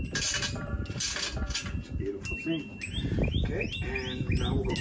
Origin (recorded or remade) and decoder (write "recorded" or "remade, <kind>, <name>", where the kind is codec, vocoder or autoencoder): recorded